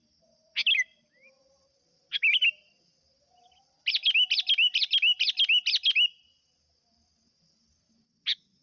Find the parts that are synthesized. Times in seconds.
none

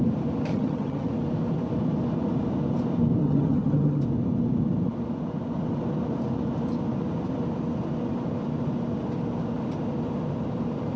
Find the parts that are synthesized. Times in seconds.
0.5-1.1 (vocoder, HiFi-GAN); 3.2-4.0

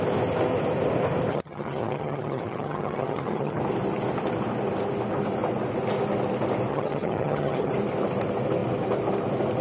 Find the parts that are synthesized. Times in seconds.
1.3-3.6 (vocoder, HiFi-GAN); 6.7-7.7

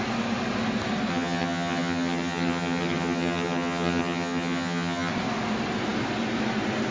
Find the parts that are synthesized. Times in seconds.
1.1-5.1 (vocoder, HiFi-GAN)